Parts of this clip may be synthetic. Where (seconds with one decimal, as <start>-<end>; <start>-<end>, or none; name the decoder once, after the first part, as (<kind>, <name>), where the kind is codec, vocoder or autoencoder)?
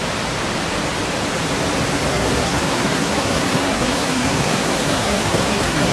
2.1-5.9 (codec, SNAC)